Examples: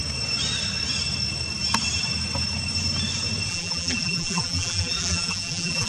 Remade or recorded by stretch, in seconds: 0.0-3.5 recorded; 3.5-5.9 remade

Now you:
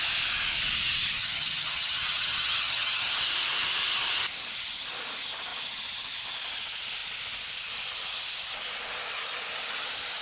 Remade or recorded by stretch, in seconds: 0.0-1.2 recorded; 1.2-3.1 remade; 3.1-10.2 recorded

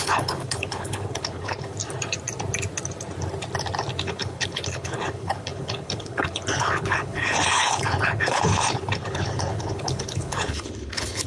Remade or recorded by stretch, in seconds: 0.0-1.8 remade; 1.8-4.0 recorded; 4.0-11.3 remade

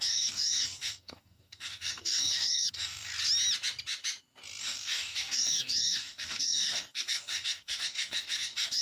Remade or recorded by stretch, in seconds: 0.0-3.1 remade; 3.1-4.6 recorded; 4.6-8.8 remade